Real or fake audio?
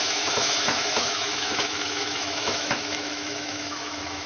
fake